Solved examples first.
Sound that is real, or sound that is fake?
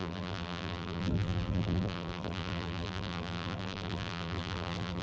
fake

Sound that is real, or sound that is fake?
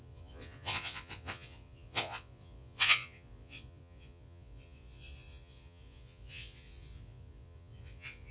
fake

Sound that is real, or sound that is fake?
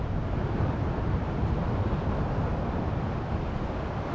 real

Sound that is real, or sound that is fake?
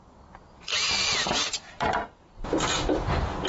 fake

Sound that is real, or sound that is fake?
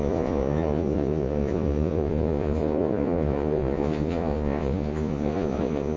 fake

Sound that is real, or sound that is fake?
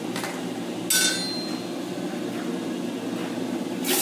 real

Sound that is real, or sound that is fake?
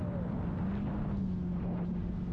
real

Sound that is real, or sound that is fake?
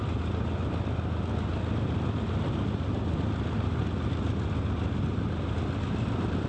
real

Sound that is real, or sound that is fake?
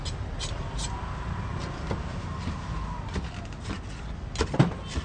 real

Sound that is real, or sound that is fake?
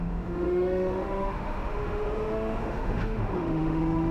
fake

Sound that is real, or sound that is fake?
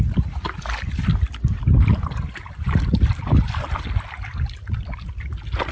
real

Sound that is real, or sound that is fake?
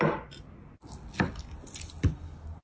real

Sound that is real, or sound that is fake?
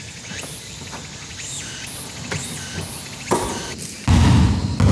real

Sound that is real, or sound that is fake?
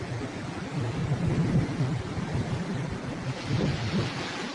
real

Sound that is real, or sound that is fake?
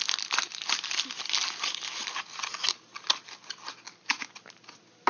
real